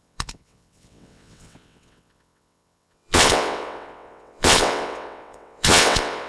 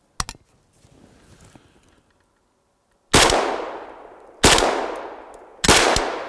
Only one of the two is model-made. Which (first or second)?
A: first